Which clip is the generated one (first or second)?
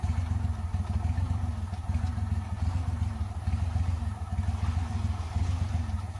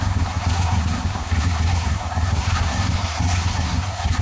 second